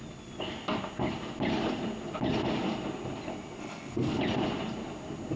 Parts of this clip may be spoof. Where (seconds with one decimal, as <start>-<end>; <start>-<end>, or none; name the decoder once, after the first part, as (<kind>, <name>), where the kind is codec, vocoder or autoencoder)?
3.6-4.2 (codec, SNAC)